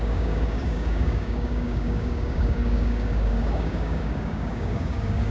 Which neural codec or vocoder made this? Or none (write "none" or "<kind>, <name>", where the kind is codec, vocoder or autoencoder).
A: codec, DAC